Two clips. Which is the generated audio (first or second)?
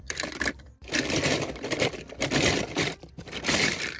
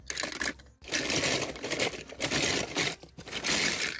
first